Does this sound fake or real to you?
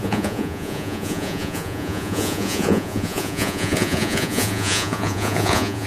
fake